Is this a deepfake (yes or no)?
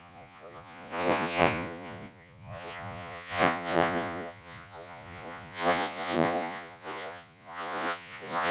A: yes